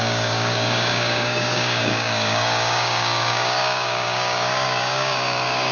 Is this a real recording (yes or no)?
no